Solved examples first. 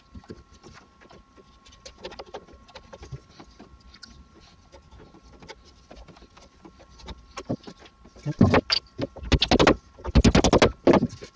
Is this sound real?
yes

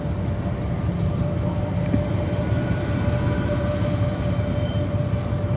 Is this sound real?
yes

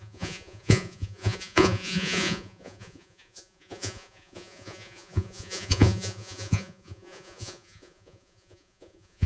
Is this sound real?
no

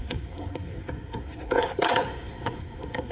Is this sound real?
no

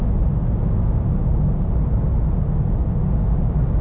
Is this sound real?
yes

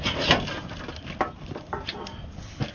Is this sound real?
yes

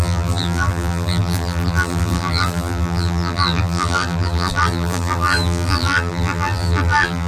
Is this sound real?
no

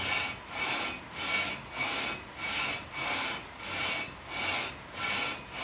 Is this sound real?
yes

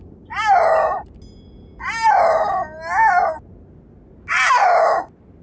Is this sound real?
yes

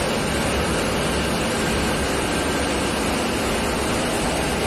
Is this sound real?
yes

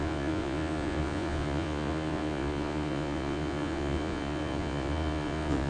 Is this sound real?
no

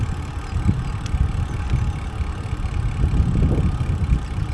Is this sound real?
yes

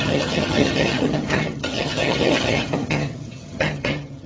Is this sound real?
no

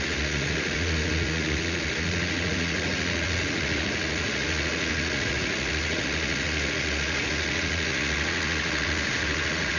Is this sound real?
no